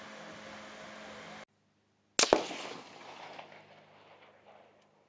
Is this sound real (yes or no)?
yes